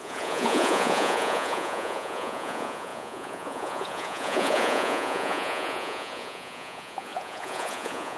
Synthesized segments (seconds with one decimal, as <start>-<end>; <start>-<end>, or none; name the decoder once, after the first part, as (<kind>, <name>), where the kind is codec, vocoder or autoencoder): 0.0-8.2 (vocoder, Vocos)